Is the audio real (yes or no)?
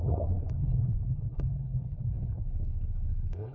no